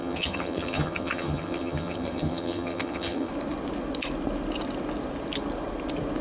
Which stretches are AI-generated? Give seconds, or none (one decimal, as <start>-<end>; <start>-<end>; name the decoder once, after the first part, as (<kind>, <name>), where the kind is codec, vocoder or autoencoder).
0.0-3.3 (vocoder, HiFi-GAN)